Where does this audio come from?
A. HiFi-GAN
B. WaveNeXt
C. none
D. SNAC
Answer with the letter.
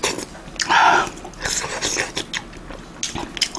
C